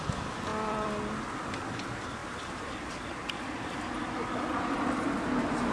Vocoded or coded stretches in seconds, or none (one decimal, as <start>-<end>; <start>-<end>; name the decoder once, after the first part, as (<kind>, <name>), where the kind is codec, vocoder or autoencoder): 0.5-1.5 (vocoder, BigVGAN v2); 2.2-3.1